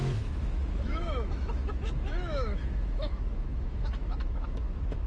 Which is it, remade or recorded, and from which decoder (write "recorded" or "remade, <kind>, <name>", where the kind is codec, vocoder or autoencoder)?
remade, autoencoder, DAC-VAE